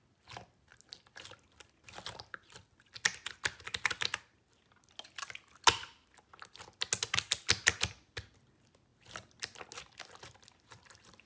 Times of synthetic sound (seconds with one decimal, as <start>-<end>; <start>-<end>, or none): none